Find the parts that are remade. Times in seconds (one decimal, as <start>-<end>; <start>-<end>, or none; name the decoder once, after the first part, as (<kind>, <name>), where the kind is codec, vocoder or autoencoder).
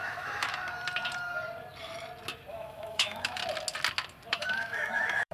0.0-0.5 (autoencoder, DAC-VAE); 2.5-3.4; 4.3-5.3